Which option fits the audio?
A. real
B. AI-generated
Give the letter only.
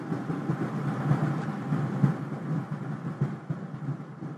A